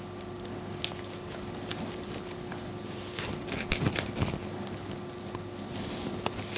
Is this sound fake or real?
real